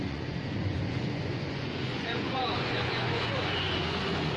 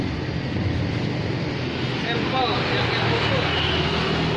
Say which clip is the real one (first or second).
second